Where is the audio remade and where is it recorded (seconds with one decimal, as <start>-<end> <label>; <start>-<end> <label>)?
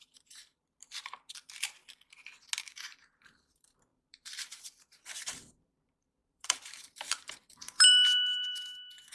0.0-1.8 remade; 1.8-2.6 recorded; 2.6-9.1 remade